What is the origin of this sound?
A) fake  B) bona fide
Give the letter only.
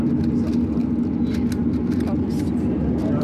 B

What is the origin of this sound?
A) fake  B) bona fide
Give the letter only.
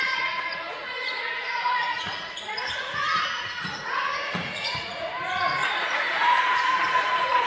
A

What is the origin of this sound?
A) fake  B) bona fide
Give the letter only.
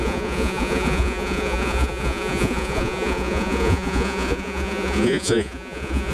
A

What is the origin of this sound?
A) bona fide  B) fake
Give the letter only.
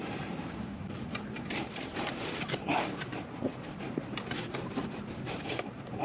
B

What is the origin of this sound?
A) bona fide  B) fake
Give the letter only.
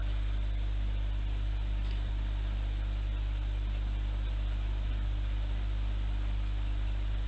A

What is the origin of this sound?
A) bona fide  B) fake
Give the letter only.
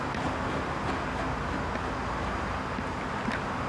A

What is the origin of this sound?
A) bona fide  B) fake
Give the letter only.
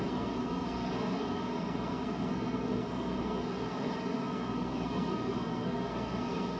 B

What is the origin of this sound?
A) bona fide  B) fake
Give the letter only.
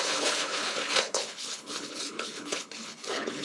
B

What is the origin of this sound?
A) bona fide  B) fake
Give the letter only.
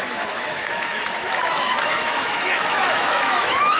B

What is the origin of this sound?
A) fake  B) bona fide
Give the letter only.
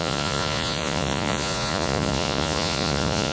A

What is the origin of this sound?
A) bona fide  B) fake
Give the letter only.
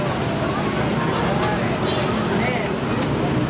A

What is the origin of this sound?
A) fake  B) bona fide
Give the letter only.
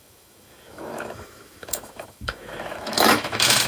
A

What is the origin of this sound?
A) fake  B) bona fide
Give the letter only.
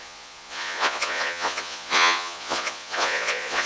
A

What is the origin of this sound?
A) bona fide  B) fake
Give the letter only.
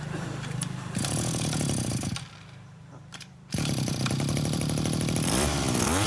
B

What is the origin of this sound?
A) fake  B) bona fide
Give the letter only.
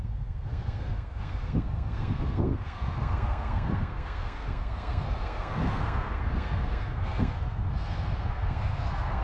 A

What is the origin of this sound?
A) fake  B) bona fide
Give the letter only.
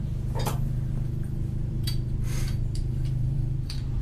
A